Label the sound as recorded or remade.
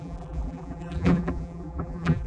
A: remade